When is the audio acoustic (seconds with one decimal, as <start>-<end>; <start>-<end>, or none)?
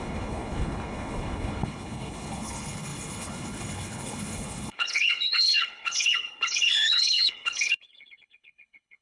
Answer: none